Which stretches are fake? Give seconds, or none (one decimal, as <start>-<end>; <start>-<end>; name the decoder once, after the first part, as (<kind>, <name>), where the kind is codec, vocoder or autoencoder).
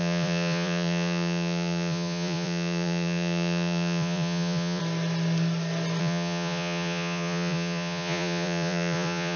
0.0-4.8 (vocoder, Vocos); 6.0-9.4